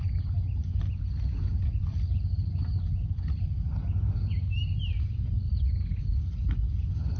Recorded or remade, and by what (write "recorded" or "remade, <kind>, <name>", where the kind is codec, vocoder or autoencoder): recorded